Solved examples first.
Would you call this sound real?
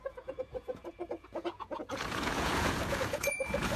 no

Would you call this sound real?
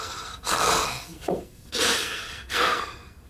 no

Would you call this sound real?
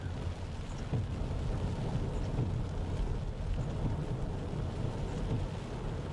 yes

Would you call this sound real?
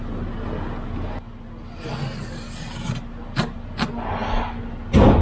yes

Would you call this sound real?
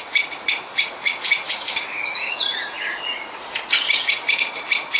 no